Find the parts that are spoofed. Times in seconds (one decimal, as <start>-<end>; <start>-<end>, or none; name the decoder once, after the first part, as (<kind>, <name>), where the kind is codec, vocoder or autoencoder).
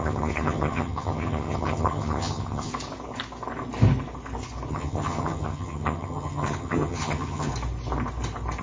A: 0.0-2.7 (vocoder, HiFi-GAN); 4.7-7.5